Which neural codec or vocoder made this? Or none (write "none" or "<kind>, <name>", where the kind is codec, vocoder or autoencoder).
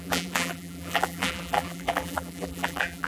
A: vocoder, BigVGAN v2